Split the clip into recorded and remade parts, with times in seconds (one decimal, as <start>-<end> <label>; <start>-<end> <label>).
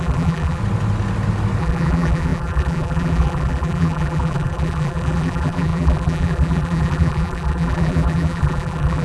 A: 0.0-0.6 remade; 0.6-1.6 recorded; 1.6-9.0 remade